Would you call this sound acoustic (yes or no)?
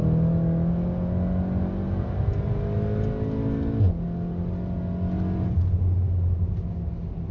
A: yes